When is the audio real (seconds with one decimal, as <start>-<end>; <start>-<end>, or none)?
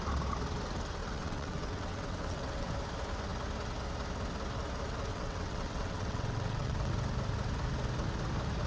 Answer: 0.0-1.0; 2.7-5.1; 6.9-8.7